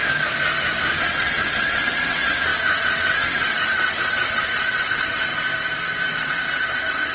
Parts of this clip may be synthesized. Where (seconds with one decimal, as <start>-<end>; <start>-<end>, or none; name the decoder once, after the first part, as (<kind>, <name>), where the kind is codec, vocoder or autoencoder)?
1.0-5.3 (vocoder, WaveNeXt); 6.2-7.1